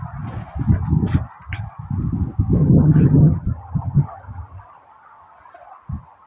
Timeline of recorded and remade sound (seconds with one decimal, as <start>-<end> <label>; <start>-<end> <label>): 0.0-2.6 recorded; 2.6-4.6 remade; 4.6-6.3 recorded